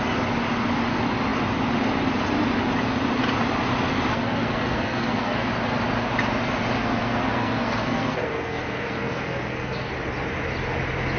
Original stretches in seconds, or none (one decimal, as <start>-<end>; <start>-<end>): 0.0-4.1; 5.5-6.8; 9.9-11.2